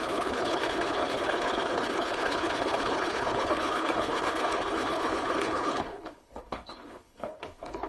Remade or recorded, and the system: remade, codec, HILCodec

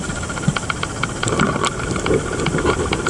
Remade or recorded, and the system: recorded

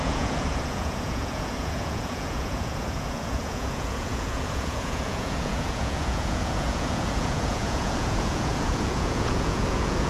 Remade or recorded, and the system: remade, vocoder, Vocos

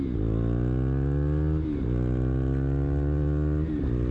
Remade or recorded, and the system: recorded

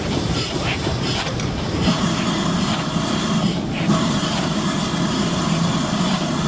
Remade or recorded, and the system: remade, vocoder, BigVGAN v2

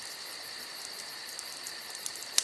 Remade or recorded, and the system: recorded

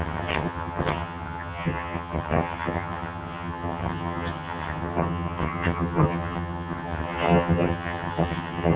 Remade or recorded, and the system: remade, vocoder, HiFi-GAN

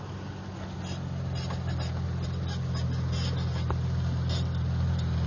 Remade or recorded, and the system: recorded